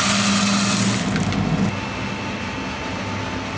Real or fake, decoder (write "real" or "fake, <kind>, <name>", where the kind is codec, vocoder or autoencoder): real